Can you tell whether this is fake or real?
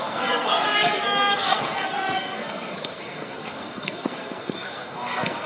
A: fake